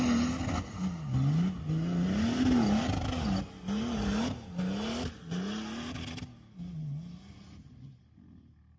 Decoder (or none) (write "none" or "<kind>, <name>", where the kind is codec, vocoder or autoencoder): none